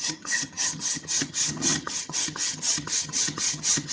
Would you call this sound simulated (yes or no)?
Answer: yes